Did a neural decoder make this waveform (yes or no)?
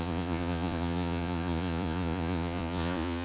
yes